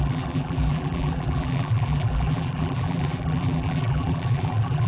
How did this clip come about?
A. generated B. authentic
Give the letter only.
A